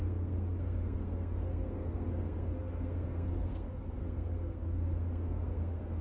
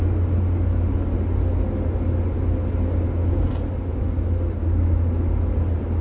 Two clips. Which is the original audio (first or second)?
second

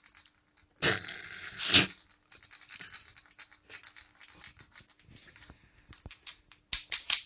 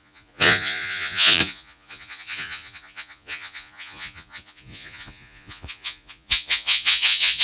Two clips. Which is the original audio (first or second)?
first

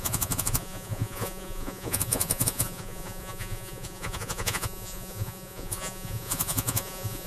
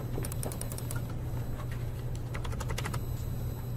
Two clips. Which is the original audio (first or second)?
second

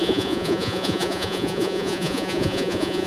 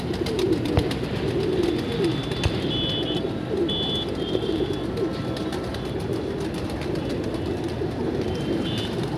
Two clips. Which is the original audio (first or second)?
second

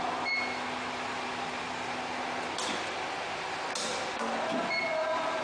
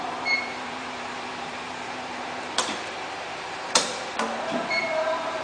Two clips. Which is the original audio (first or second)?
first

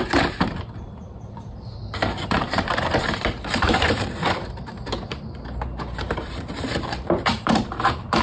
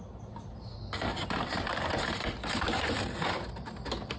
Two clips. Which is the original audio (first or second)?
second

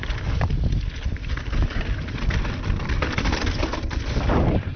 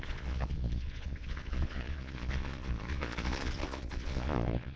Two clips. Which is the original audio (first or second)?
first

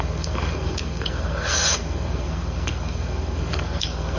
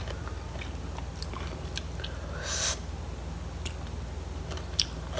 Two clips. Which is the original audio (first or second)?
second